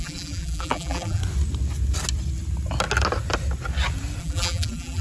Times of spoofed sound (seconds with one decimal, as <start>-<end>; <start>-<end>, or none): 0.0-1.2; 4.2-5.0